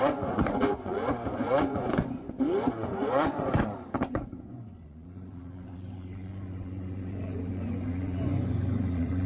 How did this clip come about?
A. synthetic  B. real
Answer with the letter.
A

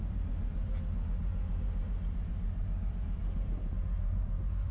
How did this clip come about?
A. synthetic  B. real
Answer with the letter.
A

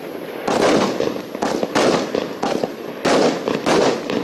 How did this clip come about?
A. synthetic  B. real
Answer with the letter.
B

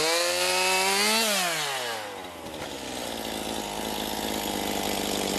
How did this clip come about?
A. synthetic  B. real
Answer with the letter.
B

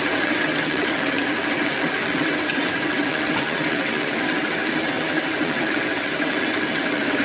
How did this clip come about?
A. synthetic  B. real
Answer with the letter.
A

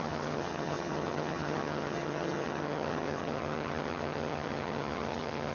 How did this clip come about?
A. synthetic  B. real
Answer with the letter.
A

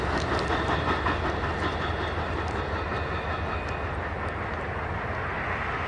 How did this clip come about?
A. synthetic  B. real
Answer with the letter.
B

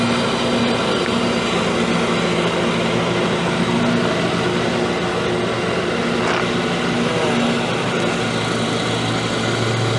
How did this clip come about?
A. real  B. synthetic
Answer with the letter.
A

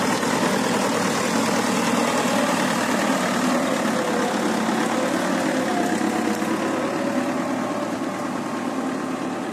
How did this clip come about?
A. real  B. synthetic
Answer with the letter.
A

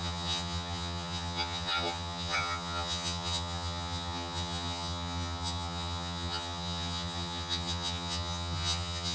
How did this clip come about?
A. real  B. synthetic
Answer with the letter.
B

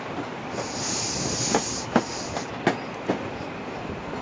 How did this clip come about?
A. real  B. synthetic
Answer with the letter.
A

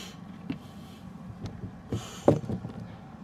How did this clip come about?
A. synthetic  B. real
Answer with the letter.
B